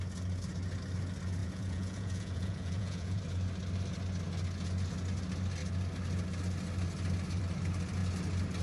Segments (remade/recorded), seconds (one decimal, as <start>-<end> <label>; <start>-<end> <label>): 0.0-1.4 recorded; 1.4-3.2 remade; 3.2-8.6 recorded